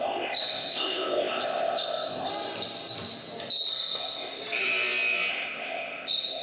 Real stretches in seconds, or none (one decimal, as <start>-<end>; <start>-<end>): 2.3-3.7; 4.4-5.3